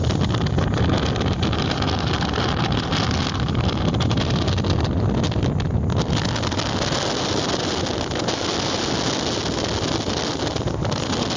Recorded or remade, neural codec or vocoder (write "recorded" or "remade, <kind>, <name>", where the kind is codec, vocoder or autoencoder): recorded